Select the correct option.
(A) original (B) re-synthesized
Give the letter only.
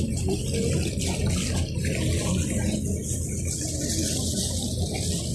A